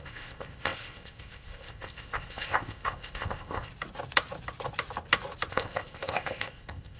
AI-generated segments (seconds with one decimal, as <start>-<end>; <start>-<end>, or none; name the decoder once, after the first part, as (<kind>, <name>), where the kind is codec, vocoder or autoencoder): 0.0-3.7 (codec, ZipCodec); 5.5-7.0